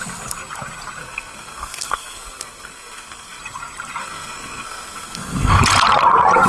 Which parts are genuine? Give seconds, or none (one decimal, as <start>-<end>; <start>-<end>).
0.0-1.0; 3.4-4.0; 5.6-6.5